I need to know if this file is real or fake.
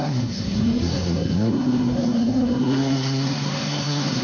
fake